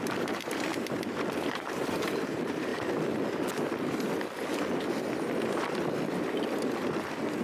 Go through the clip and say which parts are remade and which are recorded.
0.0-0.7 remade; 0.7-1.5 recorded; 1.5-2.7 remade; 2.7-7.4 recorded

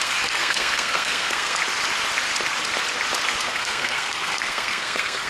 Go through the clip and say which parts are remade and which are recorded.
0.0-1.6 remade; 1.6-3.4 recorded; 3.4-5.3 remade